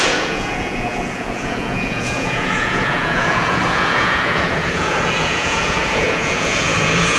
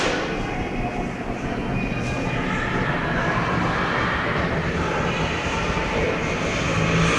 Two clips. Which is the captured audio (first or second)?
second